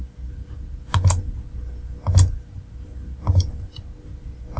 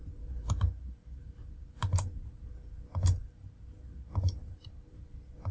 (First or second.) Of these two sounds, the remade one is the second